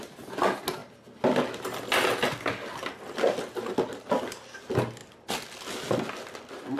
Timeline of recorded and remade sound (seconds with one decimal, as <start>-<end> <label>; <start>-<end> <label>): 0.0-6.8 recorded